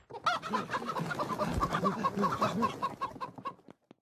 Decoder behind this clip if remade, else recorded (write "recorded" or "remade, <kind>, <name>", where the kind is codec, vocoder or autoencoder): recorded